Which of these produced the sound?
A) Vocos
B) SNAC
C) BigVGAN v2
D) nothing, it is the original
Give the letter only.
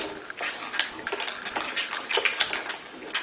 D